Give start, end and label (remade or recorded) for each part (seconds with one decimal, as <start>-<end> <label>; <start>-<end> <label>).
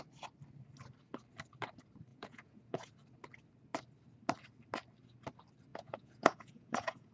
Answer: 0.0-2.1 recorded; 2.1-2.9 remade; 2.9-5.7 recorded; 5.7-7.1 remade